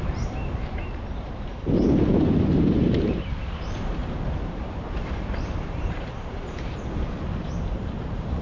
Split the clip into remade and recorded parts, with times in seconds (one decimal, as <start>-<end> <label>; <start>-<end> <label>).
0.0-4.0 remade; 4.0-4.5 recorded; 4.5-8.4 remade

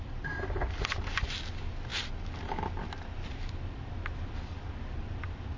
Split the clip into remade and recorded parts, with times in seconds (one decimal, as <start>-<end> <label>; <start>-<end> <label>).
0.0-5.6 recorded

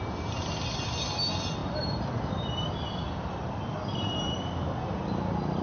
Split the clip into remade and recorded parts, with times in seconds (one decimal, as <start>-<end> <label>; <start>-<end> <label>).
0.0-1.6 recorded; 1.6-5.0 remade; 5.0-5.6 recorded

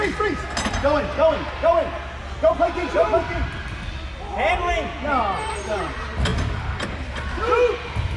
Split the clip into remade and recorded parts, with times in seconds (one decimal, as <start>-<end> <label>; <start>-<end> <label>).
0.0-6.3 recorded; 6.3-7.5 remade; 7.5-8.2 recorded

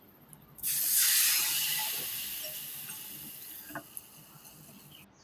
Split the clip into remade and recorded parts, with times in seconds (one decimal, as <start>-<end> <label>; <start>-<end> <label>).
0.0-5.2 recorded